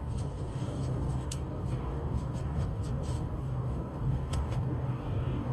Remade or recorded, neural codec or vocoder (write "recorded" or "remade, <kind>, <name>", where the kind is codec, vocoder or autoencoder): remade, codec, DAC